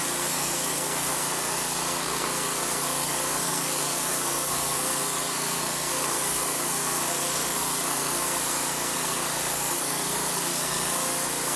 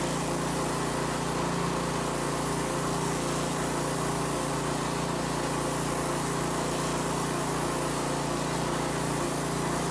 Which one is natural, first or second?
second